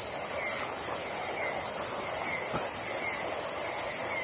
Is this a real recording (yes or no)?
yes